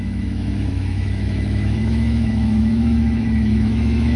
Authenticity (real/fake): fake